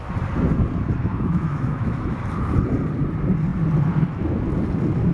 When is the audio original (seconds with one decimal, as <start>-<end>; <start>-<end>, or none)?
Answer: 0.0-1.0; 2.2-5.1